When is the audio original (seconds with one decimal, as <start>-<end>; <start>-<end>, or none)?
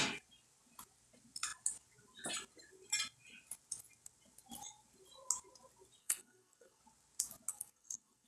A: 0.0-6.0; 6.8-7.5